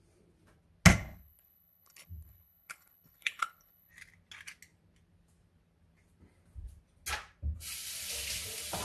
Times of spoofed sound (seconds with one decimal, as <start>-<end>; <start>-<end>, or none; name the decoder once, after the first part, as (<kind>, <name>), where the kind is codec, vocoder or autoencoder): 0.9-3.9 (codec, HILCodec)